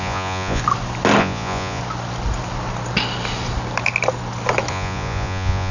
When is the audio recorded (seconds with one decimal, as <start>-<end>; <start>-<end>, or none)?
0.6-1.2; 1.8-4.7